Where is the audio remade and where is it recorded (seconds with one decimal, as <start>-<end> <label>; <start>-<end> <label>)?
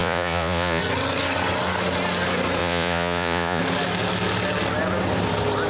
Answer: 0.0-0.8 remade; 0.8-2.6 recorded; 2.6-3.6 remade; 3.6-5.7 recorded